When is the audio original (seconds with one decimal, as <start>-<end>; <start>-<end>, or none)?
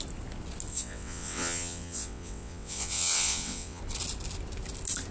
0.0-0.7; 3.8-5.1